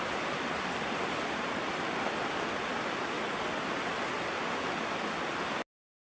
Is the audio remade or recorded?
recorded